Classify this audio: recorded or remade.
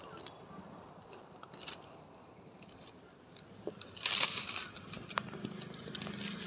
recorded